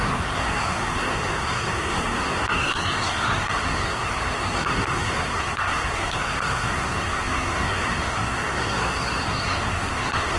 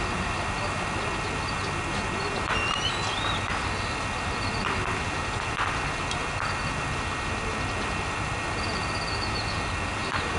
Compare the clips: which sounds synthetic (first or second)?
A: first